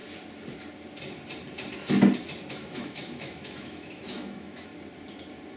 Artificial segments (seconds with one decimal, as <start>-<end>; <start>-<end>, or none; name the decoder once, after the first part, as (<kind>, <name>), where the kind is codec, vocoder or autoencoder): 2.5-4.7 (autoencoder, DAC-VAE)